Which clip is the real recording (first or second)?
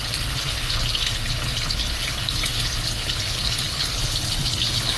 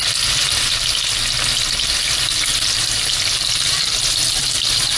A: second